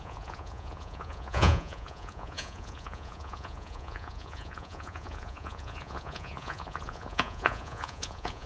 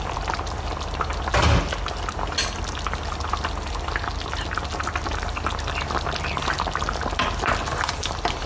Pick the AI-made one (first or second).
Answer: first